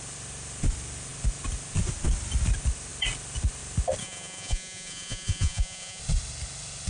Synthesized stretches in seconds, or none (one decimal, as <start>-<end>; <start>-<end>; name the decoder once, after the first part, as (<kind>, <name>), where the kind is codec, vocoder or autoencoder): 4.0-6.0 (vocoder, Vocos)